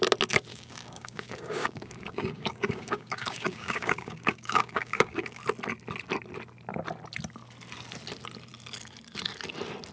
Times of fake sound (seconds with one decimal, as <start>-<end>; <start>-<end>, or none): 0.5-5.4